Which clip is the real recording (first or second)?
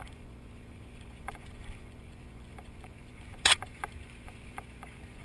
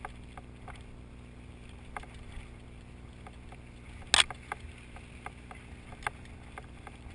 second